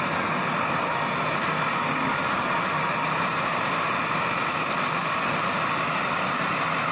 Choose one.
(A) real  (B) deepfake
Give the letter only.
A